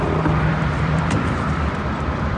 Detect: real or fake fake